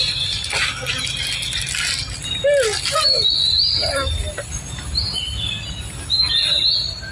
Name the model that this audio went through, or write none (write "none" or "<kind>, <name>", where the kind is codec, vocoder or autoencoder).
none